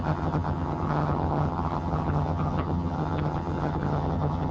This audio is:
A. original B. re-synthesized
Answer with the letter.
B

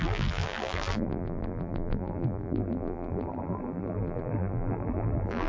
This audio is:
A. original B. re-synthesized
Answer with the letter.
B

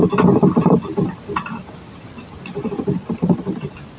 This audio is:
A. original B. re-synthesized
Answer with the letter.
A